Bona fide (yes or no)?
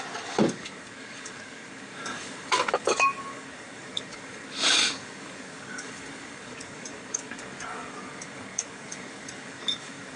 no